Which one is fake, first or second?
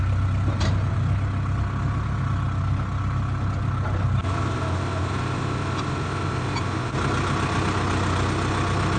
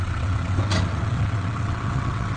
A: second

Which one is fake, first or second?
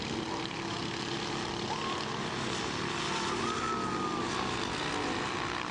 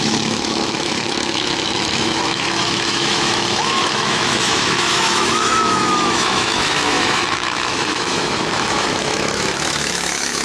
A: second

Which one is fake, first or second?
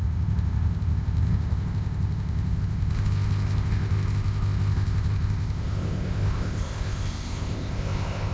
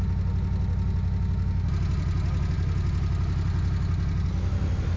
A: first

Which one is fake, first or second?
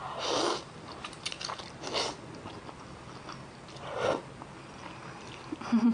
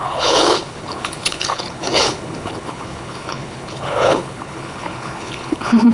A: second